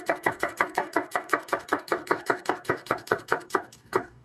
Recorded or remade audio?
remade